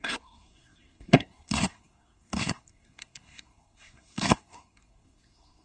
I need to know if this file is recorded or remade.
remade